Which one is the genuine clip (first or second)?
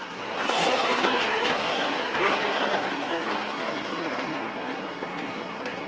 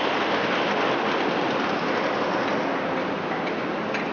second